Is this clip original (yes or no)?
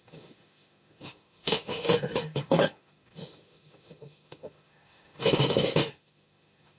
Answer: no